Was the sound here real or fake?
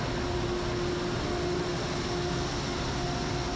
real